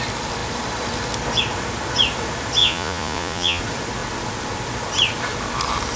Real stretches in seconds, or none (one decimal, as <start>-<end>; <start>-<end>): 0.0-2.6; 3.6-6.0